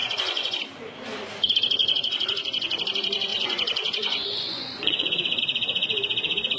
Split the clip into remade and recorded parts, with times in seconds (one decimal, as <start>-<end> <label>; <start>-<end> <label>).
0.0-0.6 remade; 0.6-1.8 recorded; 1.8-2.8 remade; 2.8-3.3 recorded; 3.3-5.4 remade; 5.4-6.6 recorded